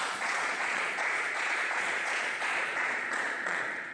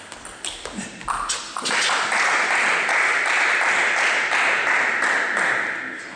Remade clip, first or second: first